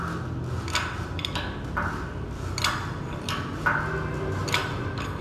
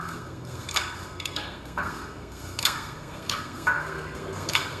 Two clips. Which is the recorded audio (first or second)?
first